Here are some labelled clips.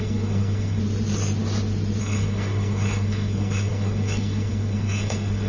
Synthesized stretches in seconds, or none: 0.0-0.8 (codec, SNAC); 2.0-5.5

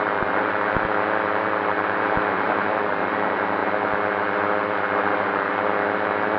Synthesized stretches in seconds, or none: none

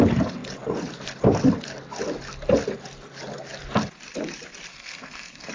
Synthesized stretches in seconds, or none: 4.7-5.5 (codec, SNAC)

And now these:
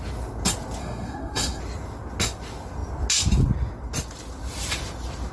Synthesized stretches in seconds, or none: 0.8-1.6 (codec, SNAC)